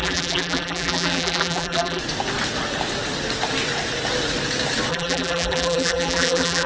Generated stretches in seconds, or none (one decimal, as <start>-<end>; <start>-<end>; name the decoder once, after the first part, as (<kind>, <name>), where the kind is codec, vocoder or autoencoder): 0.0-2.0 (vocoder, BigVGAN v2); 4.9-6.7